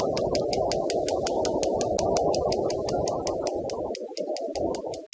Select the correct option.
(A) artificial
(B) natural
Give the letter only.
B